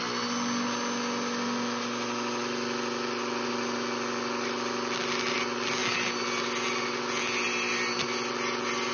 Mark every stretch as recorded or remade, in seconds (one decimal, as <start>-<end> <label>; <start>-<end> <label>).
0.0-8.9 recorded